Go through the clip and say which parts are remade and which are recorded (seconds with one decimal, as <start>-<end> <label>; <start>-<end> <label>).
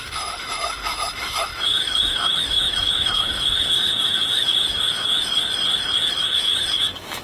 0.0-5.1 remade; 5.1-6.1 recorded; 6.1-7.2 remade